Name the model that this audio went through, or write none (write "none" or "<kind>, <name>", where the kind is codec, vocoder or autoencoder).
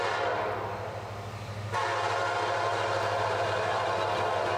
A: none